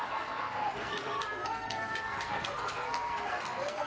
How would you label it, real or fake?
fake